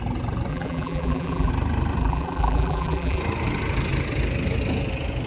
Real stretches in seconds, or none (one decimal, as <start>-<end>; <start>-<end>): 0.0-0.5; 1.5-2.0; 3.2-5.3